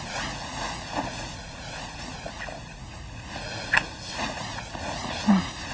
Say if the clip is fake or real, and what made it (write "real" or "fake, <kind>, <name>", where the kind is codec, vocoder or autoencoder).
fake, vocoder, Vocos